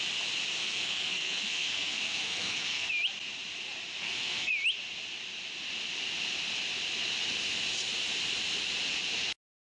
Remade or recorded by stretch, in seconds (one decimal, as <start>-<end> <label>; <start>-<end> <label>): 0.0-0.6 recorded; 0.6-2.9 remade; 2.9-4.0 recorded; 4.0-4.5 remade; 4.5-9.8 recorded